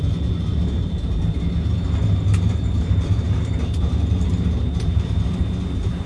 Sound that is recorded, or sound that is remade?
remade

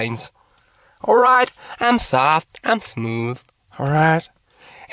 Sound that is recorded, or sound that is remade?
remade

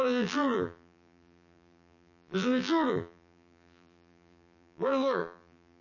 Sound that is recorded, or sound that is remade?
remade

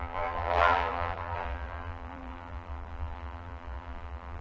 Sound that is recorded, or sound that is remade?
remade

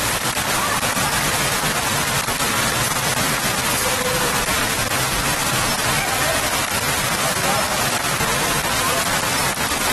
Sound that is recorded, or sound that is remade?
recorded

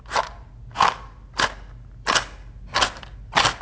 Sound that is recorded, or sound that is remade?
recorded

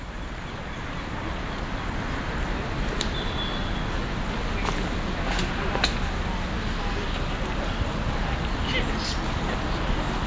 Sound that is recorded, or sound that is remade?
recorded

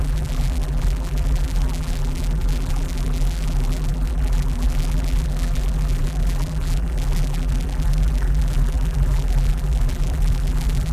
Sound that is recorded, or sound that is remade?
remade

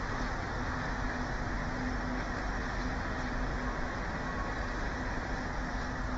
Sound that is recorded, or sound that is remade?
recorded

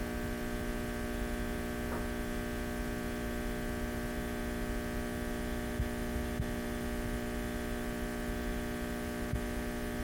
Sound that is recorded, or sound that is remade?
recorded